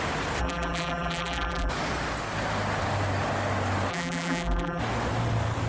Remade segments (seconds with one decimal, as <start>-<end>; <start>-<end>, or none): 0.4-1.7; 3.9-4.8